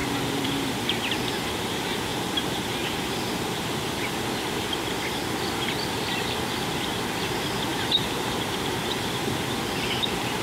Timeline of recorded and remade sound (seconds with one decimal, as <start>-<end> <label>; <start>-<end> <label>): 0.0-1.4 remade; 1.4-7.7 recorded; 7.7-9.6 remade; 9.6-10.4 recorded